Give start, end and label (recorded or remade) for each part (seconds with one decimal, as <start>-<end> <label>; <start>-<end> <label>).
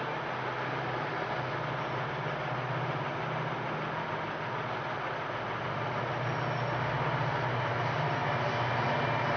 0.0-9.4 recorded